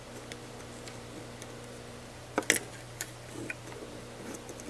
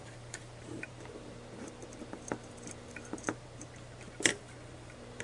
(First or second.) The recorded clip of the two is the first